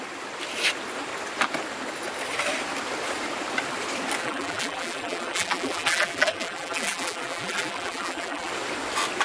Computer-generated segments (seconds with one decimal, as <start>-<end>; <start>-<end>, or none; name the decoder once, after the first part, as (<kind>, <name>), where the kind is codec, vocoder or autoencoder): 4.2-8.5 (vocoder, BigVGAN v2)